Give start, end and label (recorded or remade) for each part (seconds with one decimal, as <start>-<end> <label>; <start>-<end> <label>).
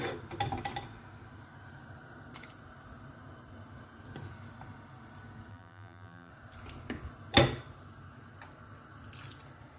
0.0-5.5 recorded; 5.5-6.3 remade; 6.3-9.8 recorded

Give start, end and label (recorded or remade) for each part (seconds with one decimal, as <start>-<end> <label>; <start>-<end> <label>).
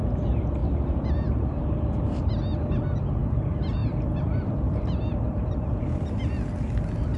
0.0-0.6 recorded; 0.6-1.8 remade; 1.8-3.8 recorded; 3.8-5.8 remade; 5.8-7.2 recorded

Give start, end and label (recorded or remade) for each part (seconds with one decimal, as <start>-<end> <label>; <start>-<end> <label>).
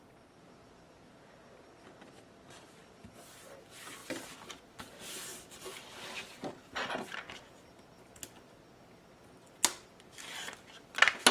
0.0-5.3 recorded; 5.3-6.0 remade; 6.0-11.3 recorded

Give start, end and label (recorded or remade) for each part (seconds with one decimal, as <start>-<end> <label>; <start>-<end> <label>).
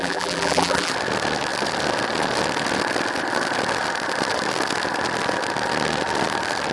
0.0-0.9 remade; 0.9-6.7 recorded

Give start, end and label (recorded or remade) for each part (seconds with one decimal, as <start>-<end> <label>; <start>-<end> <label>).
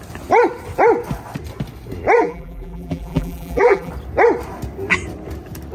0.0-2.2 recorded; 2.2-3.9 remade; 3.9-5.7 recorded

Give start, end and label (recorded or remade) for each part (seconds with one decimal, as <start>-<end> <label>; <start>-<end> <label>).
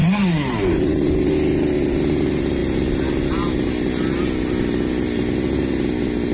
0.0-1.3 remade; 1.3-6.3 recorded